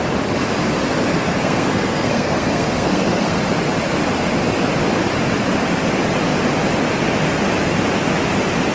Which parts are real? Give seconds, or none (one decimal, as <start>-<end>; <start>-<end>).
0.0-1.1; 3.4-8.7